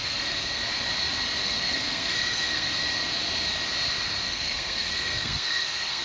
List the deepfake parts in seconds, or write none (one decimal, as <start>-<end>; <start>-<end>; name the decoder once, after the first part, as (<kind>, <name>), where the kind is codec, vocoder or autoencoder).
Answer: 0.0-0.6 (codec, SNAC); 1.4-2.8; 4.3-6.0